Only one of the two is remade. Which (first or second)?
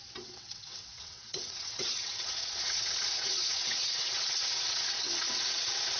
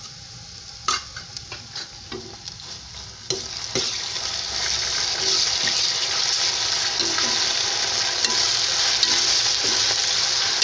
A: first